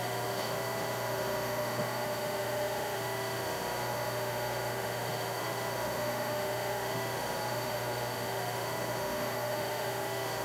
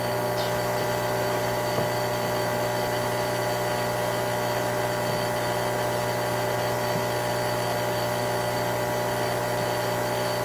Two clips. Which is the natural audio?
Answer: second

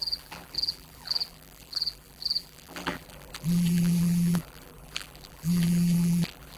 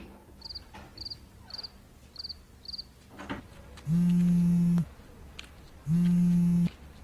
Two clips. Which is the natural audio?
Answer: second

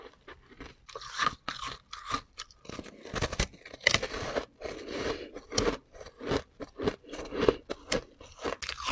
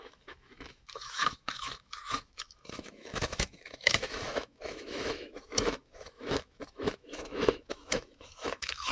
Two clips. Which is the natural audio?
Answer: first